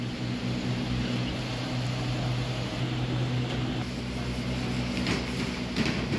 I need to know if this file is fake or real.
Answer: real